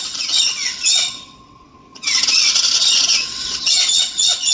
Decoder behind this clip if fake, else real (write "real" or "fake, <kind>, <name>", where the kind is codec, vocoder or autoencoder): fake, vocoder, WaveNeXt